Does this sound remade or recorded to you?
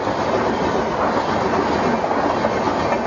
recorded